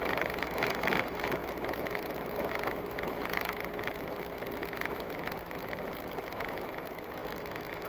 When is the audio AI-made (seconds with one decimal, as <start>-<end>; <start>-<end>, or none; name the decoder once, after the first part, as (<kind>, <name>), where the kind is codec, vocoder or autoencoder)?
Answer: 0.0-7.9 (autoencoder, DAC-VAE)